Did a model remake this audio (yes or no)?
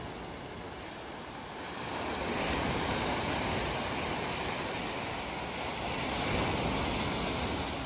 no